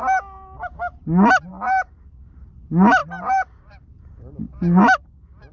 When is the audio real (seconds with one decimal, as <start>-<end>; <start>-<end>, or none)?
0.0-5.5